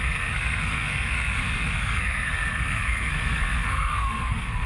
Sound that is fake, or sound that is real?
fake